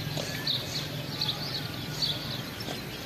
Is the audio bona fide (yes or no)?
yes